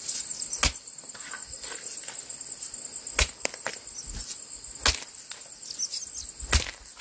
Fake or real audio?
real